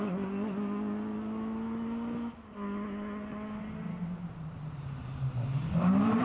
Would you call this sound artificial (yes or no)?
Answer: no